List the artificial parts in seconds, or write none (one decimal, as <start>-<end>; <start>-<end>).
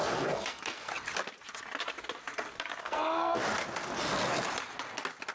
0.0-0.9; 2.8-3.4